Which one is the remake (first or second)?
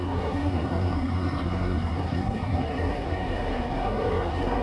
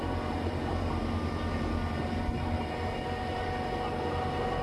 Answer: first